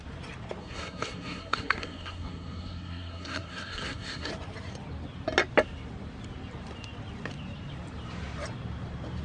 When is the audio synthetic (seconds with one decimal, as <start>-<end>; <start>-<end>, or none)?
0.6-4.3